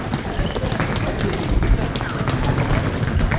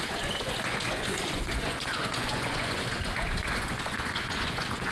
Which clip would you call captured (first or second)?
first